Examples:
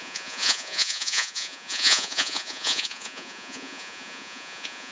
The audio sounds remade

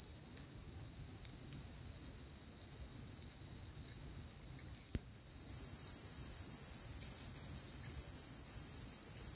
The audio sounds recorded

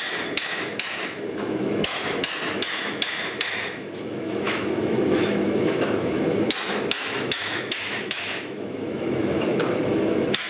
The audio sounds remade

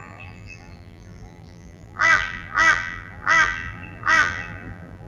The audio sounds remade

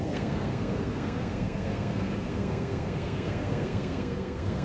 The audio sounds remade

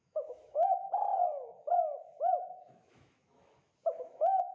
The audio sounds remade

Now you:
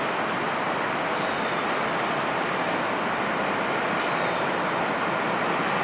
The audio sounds recorded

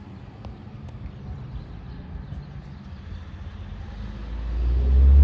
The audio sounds recorded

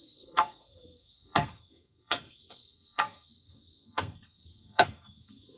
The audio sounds remade